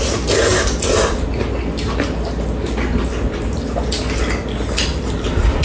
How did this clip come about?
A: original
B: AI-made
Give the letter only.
A